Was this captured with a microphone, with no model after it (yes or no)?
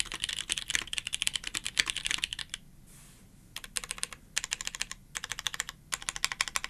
yes